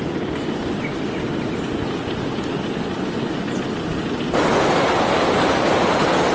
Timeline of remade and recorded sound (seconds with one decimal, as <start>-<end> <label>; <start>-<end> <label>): 0.0-6.3 recorded

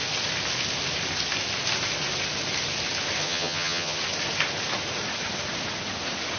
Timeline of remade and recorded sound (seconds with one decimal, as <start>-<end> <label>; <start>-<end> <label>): 0.0-3.2 recorded; 3.2-4.0 remade; 4.0-6.4 recorded

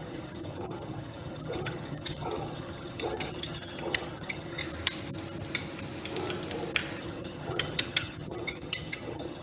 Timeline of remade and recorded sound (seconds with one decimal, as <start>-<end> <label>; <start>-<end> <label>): 0.0-4.6 remade; 4.6-7.0 recorded; 7.0-9.4 remade

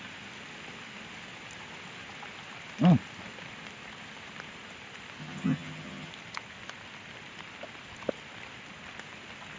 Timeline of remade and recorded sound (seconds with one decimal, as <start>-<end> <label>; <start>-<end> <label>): 0.0-5.2 recorded; 5.2-6.1 remade; 6.1-9.6 recorded

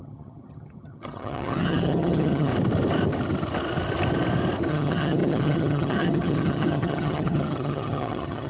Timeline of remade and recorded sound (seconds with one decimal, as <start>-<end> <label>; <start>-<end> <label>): 0.0-2.5 remade; 2.5-4.7 recorded; 4.7-8.5 remade

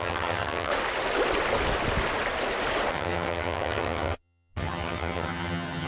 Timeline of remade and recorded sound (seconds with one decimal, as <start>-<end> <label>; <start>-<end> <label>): 0.0-0.7 remade; 0.7-2.9 recorded; 2.9-5.9 remade